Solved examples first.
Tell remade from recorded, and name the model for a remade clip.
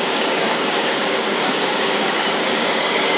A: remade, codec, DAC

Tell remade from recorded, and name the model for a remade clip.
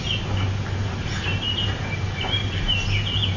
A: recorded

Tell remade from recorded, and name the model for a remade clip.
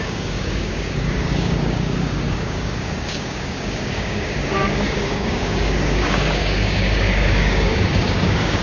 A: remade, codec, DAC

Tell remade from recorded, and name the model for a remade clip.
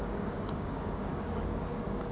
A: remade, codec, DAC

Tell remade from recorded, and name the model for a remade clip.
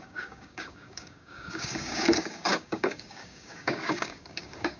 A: remade, codec, DAC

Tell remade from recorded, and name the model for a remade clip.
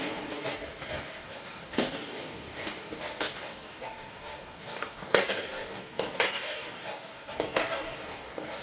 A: remade, codec, DAC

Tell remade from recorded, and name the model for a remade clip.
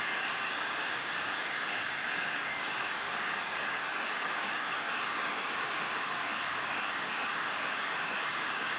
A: remade, codec, DAC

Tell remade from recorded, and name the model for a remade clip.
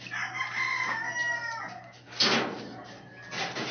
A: recorded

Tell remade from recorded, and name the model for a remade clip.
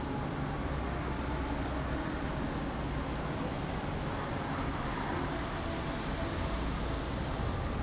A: recorded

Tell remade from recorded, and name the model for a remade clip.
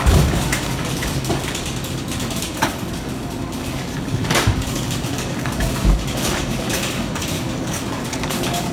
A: remade, codec, DAC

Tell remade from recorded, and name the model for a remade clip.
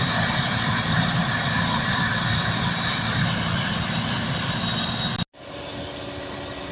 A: recorded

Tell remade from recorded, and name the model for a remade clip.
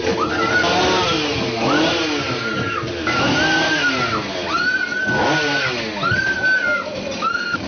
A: recorded